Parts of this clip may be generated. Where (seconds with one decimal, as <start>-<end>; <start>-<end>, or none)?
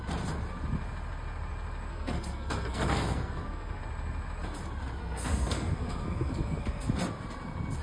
1.9-3.8; 5.0-6.9